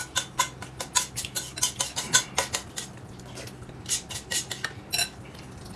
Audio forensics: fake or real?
real